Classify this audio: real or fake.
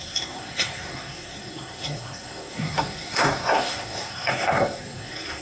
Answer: fake